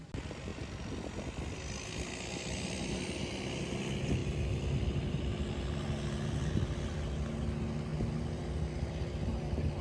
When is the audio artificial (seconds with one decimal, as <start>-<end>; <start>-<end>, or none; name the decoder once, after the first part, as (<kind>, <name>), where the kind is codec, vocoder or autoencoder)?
none